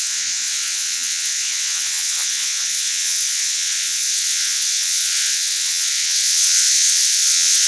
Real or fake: fake